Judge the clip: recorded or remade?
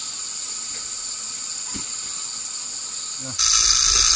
recorded